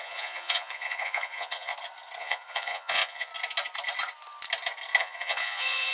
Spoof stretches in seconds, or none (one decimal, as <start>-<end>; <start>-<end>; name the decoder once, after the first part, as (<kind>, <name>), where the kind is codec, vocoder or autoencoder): 0.0-1.7 (vocoder, Vocos); 2.2-3.3; 5.0-5.9